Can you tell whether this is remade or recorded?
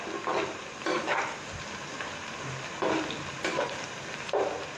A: recorded